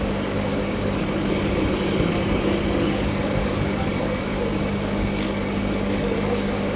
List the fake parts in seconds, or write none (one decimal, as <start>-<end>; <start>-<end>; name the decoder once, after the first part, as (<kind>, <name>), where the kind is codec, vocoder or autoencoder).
0.0-6.8 (codec, DAC)